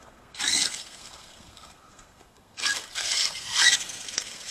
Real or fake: fake